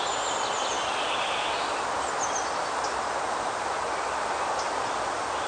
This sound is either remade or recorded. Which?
recorded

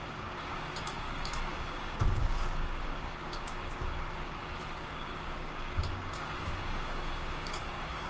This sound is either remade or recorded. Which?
remade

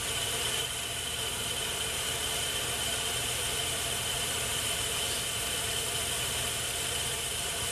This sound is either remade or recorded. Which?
remade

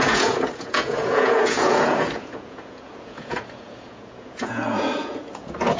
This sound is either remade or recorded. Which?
remade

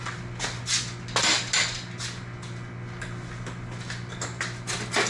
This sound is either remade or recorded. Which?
recorded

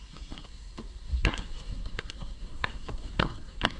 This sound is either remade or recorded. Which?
remade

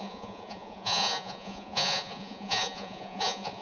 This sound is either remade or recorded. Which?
remade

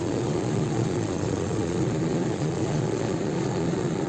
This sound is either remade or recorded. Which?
remade